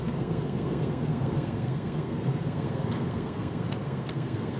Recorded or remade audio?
remade